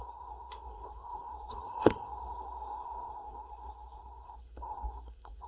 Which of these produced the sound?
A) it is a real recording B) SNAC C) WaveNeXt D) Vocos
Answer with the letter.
B